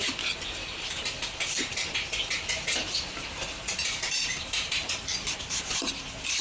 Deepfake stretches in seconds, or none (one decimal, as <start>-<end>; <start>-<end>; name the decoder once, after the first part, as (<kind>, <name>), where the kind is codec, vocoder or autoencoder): 0.0-1.7 (vocoder, BigVGAN v2); 3.7-6.4